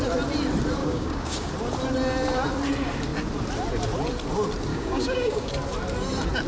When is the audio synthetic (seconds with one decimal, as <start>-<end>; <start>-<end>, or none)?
0.8-1.5; 4.7-5.5